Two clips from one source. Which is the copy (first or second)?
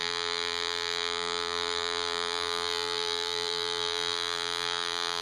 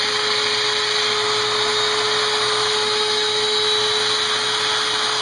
first